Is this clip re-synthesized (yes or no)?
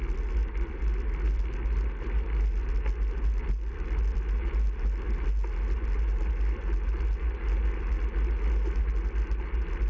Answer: no